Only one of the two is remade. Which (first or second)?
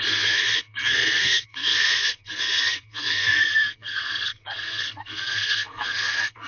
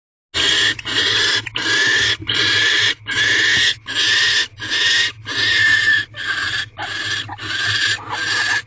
first